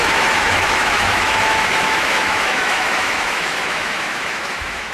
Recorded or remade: remade